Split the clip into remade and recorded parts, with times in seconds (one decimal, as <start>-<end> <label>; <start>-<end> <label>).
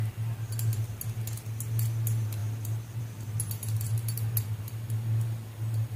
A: 0.0-6.0 recorded